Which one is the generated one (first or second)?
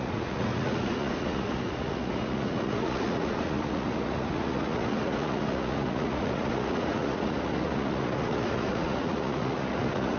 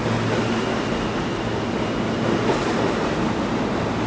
first